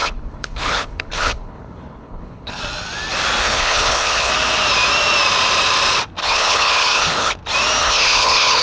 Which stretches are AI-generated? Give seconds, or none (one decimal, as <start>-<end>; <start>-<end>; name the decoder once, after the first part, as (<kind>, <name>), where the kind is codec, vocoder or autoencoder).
0.0-2.6 (codec, HILCodec); 3.4-4.3; 6.2-7.3; 7.8-8.6